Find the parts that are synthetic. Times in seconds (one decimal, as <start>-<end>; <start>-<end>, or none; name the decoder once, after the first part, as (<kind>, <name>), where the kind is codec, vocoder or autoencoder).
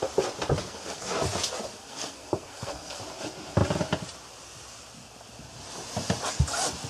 0.6-1.1 (codec, SNAC); 1.8-3.0